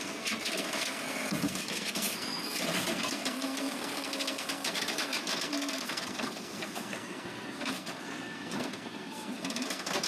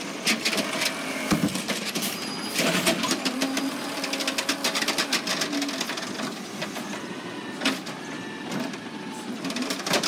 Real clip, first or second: second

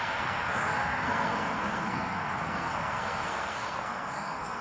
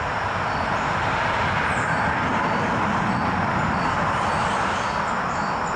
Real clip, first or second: second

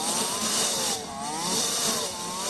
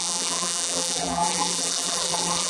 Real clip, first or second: first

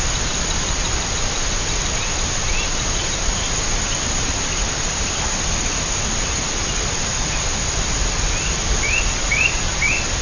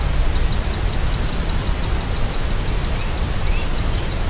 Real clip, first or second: second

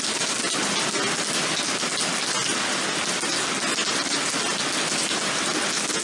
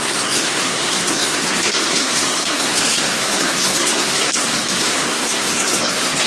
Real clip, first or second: first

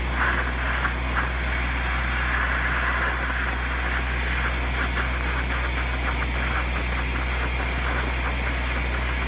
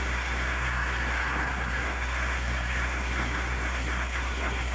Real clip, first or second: first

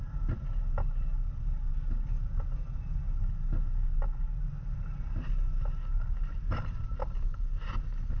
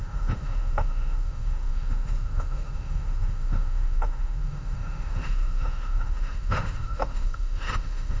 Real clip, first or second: first